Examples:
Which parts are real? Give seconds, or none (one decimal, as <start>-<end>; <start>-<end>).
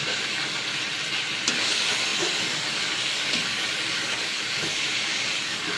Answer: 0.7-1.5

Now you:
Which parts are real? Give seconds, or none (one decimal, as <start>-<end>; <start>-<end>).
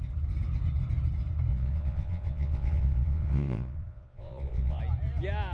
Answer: 0.0-1.5; 4.8-5.5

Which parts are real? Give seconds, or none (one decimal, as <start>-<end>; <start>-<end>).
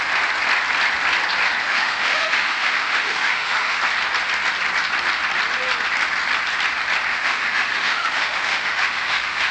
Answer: 0.0-1.6; 3.8-7.1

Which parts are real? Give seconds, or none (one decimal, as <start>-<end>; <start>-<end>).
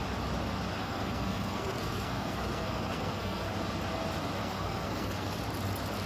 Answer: 0.0-0.8; 3.5-4.4; 5.4-6.1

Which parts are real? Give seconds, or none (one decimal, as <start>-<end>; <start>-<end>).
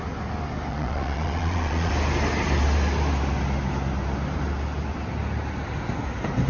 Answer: 0.0-0.7; 1.9-6.5